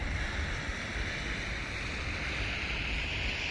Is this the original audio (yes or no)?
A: yes